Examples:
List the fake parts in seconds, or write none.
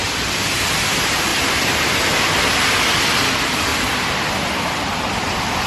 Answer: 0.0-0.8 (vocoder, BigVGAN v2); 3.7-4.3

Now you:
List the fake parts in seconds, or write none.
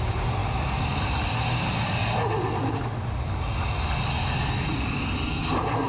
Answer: none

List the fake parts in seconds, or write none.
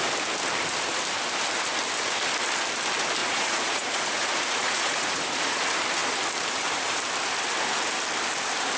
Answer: 3.2-5.6 (vocoder, Vocos)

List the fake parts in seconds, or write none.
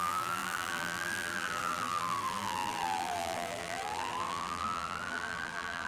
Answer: 0.0-5.9 (vocoder, BigVGAN v2)